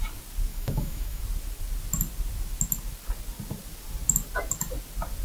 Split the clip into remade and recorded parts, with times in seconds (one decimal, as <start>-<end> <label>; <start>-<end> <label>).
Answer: 0.0-0.5 recorded; 0.5-1.2 remade; 1.2-5.2 recorded